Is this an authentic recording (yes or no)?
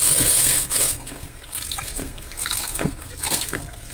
no